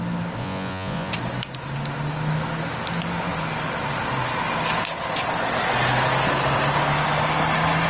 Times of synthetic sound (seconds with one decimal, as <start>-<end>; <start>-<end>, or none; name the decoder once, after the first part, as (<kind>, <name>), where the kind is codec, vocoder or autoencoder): 0.4-1.1 (vocoder, Vocos)